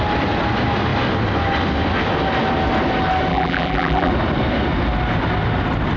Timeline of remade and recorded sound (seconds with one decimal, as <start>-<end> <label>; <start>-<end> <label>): 0.0-3.3 recorded; 3.3-4.1 remade; 4.1-6.0 recorded